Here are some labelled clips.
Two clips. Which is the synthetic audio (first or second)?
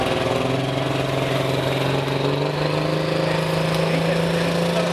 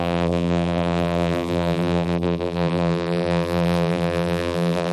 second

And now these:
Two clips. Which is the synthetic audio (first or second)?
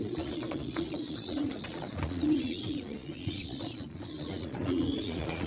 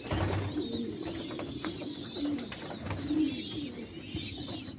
first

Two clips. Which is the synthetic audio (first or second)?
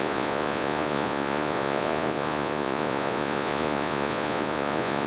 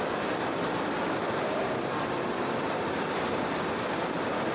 first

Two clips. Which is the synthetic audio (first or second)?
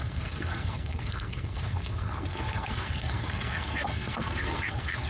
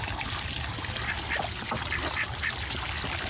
first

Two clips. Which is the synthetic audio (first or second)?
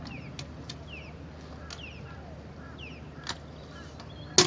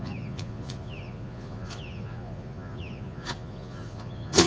second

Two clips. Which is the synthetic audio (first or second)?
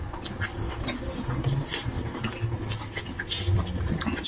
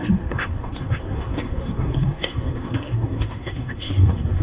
second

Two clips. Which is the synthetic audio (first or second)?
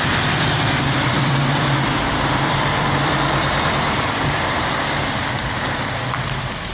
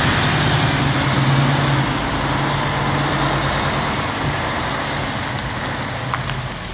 first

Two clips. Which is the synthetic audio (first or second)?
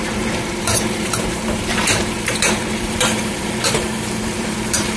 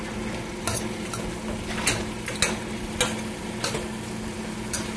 first